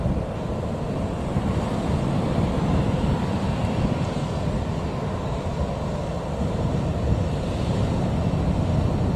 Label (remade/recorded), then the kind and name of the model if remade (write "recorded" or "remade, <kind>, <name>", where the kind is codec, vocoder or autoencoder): recorded